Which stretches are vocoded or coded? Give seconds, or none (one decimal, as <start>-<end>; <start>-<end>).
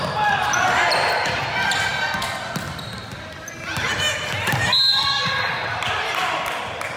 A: none